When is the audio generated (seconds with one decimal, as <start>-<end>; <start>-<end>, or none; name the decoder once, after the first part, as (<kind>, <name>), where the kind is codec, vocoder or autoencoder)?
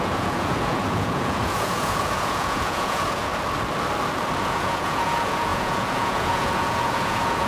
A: 0.0-3.3 (vocoder, Vocos); 4.4-7.5